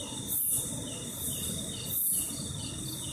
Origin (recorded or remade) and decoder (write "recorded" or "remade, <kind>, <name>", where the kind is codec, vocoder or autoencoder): recorded